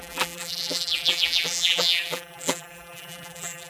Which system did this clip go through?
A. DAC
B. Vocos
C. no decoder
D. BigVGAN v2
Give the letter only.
D